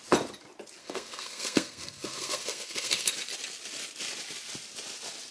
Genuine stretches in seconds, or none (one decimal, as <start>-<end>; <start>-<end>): 0.0-0.8; 3.1-5.3